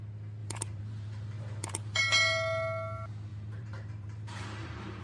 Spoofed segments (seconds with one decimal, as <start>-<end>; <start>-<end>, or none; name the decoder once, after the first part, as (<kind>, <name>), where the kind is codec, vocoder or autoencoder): 0.4-2.0 (vocoder, BigVGAN v2); 3.3-5.0